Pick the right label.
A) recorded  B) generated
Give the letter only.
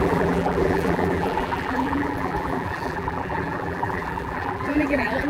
B